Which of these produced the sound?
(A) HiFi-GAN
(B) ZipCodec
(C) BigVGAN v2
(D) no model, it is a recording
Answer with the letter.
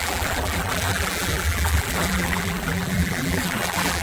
C